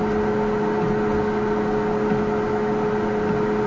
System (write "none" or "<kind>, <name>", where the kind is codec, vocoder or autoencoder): none